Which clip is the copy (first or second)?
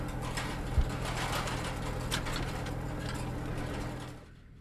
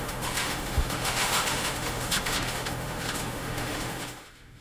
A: second